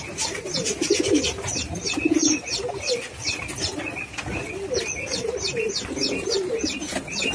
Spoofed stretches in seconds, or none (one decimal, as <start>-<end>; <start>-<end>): none